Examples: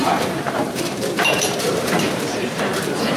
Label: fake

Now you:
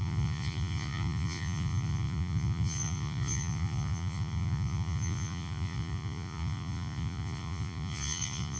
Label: fake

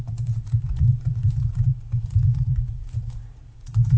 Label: fake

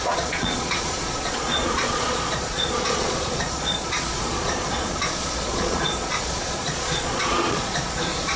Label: fake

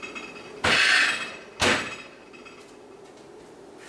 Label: real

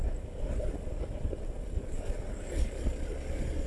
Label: real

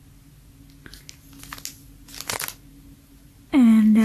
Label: real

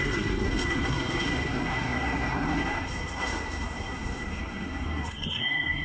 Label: fake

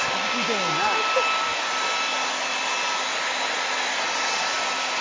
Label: real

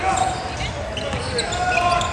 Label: real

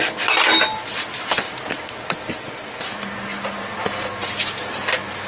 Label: real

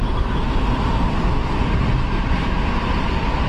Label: real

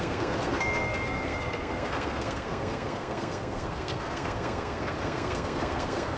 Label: fake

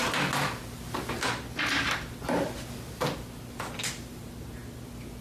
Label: real